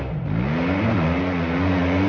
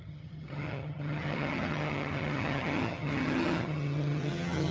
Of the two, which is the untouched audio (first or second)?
first